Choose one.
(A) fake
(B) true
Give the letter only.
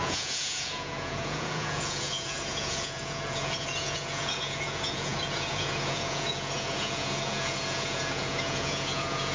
A